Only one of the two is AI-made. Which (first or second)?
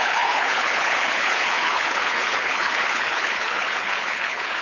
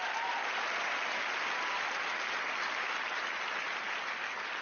first